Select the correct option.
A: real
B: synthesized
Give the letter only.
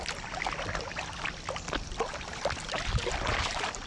A